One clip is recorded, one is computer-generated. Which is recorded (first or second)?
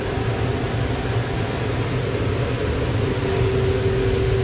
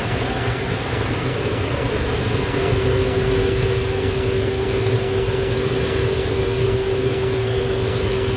first